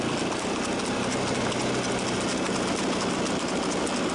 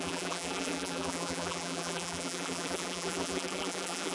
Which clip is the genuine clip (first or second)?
first